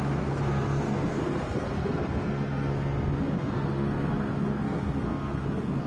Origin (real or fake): fake